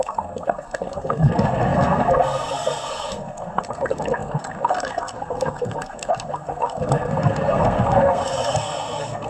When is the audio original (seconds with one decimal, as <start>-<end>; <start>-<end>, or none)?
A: none